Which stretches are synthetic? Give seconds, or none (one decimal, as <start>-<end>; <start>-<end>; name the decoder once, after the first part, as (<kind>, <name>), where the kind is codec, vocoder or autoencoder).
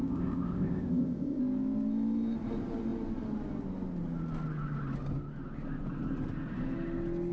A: 0.0-1.4 (codec, ZipCodec)